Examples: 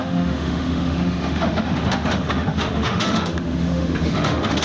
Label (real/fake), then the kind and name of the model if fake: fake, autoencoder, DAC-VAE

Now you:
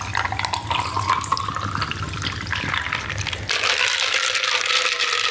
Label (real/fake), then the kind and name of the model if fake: real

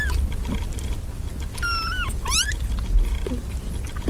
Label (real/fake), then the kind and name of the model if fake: real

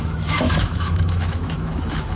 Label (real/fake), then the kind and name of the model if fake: fake, autoencoder, DAC-VAE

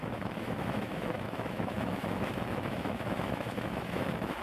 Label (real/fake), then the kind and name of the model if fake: fake, autoencoder, DAC-VAE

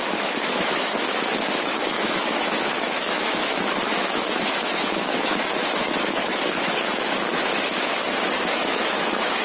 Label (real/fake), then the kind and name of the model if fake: fake, autoencoder, DAC-VAE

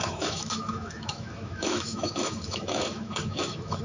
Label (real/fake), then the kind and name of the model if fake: fake, autoencoder, DAC-VAE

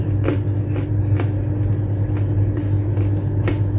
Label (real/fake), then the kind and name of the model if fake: real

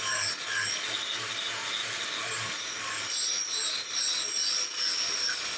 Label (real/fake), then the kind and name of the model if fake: real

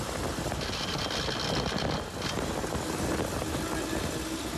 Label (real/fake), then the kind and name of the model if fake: real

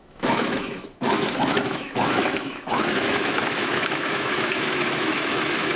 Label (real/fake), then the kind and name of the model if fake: fake, autoencoder, DAC-VAE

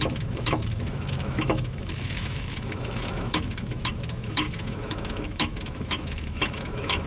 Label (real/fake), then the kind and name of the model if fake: fake, autoencoder, DAC-VAE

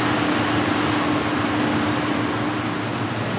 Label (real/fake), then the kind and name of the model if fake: real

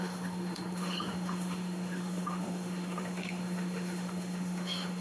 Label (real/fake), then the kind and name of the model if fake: fake, autoencoder, DAC-VAE